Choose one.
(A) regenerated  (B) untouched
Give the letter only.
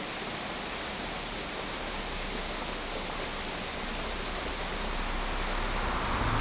B